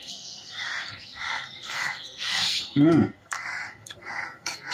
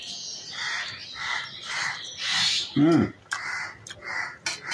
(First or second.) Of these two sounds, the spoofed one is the first